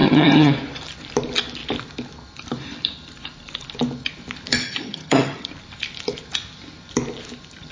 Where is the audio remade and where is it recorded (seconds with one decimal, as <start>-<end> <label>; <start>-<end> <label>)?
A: 0.0-0.5 remade; 0.5-4.6 recorded; 4.6-5.5 remade; 5.5-7.7 recorded

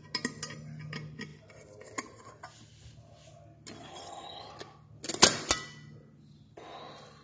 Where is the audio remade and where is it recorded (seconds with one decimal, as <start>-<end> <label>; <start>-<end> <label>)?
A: 0.0-3.9 recorded; 3.9-4.5 remade; 4.5-7.2 recorded

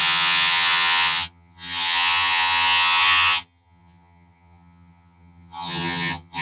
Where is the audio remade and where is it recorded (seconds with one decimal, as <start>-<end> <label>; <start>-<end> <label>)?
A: 0.0-6.4 remade

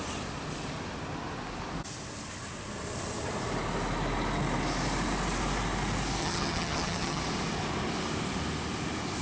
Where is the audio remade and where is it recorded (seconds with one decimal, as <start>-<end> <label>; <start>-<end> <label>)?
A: 0.0-6.2 recorded; 6.2-7.2 remade; 7.2-9.2 recorded

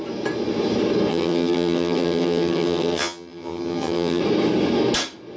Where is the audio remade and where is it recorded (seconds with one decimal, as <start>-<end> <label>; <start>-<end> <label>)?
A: 0.0-1.1 recorded; 1.1-4.2 remade; 4.2-5.4 recorded

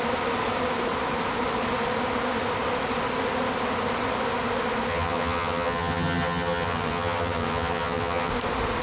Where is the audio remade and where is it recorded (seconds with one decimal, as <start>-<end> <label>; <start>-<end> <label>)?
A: 0.0-4.9 recorded; 4.9-8.3 remade; 8.3-8.8 recorded

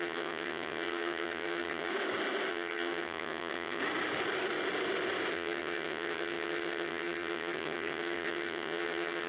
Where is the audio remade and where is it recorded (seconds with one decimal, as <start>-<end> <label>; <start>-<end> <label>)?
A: 0.0-1.9 remade; 1.9-2.5 recorded; 2.5-3.8 remade; 3.8-5.3 recorded; 5.3-9.3 remade